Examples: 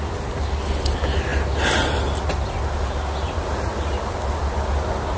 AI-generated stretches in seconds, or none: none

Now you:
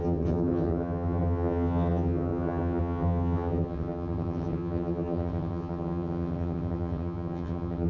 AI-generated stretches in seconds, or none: 0.0-7.9 (vocoder, HiFi-GAN)

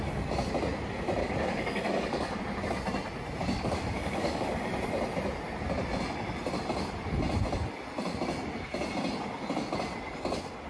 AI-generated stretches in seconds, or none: 1.2-2.4 (codec, DAC); 3.4-4.7

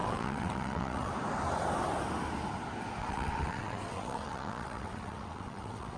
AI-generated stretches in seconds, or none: 0.0-1.1 (vocoder, WaveNeXt); 3.0-6.0

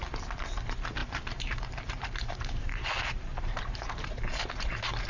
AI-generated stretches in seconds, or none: 1.0-4.1 (vocoder, BigVGAN v2)

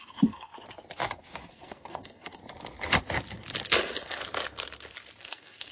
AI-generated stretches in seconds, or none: 0.0-0.5 (codec, SNAC); 1.5-2.4; 3.7-4.2; 5.2-5.7

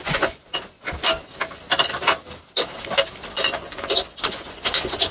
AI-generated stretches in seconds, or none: 0.0-0.4 (vocoder, Vocos); 3.3-5.1